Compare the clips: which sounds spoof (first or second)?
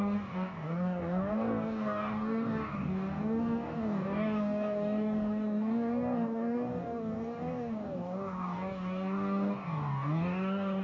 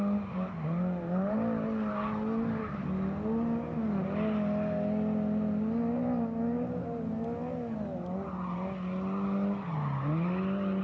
first